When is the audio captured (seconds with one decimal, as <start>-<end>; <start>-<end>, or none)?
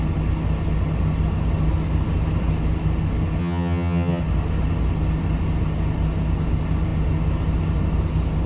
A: 0.0-3.4; 4.2-8.5